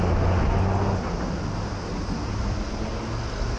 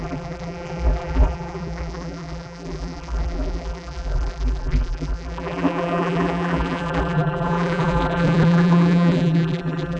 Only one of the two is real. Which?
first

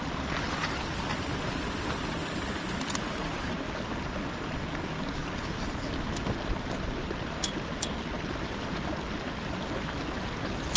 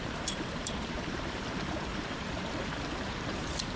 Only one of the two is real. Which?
first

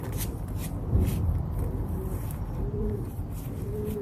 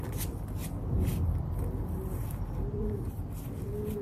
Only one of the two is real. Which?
second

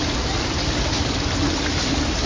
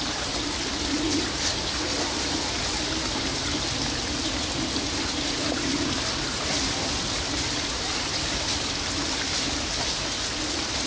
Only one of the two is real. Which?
first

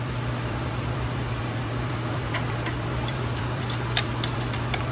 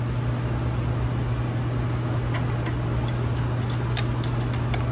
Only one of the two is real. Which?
second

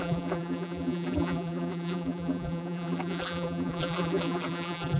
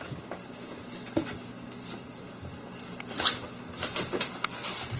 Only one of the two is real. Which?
second